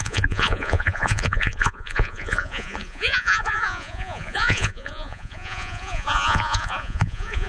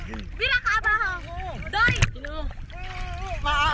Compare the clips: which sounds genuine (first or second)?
second